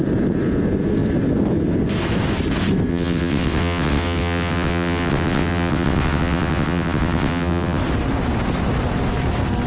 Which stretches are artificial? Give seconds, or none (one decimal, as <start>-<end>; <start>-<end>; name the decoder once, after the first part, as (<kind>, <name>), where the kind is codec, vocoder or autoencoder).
2.9-7.8 (vocoder, WaveNeXt)